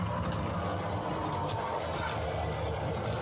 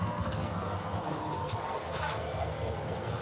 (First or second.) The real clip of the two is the first